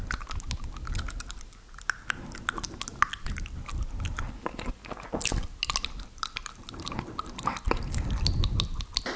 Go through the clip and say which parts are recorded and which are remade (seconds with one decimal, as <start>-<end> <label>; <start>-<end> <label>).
0.0-9.2 recorded

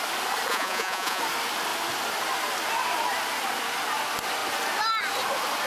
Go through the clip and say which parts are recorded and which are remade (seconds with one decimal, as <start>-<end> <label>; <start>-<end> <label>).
0.0-0.5 recorded; 0.5-1.2 remade; 1.2-5.7 recorded

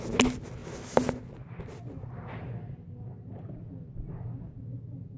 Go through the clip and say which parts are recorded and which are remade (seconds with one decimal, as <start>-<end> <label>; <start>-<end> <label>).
0.0-5.2 recorded

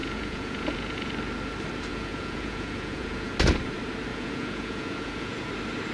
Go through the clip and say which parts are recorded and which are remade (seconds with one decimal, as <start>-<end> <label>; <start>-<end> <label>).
0.0-1.1 remade; 1.1-1.9 recorded; 1.9-3.3 remade; 3.3-4.1 recorded; 4.1-5.5 remade; 5.5-5.9 recorded